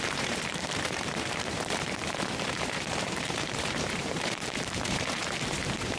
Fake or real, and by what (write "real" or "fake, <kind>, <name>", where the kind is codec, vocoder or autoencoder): fake, vocoder, BigVGAN v2